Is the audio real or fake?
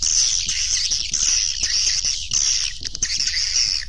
real